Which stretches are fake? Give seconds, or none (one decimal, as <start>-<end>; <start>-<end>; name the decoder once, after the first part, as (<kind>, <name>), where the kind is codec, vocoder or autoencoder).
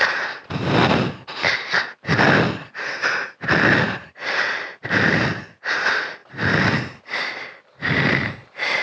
none